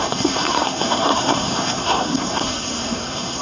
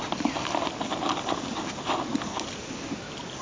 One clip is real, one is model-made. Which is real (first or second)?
second